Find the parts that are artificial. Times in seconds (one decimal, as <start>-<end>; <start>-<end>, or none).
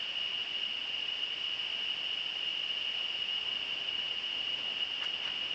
0.0-1.4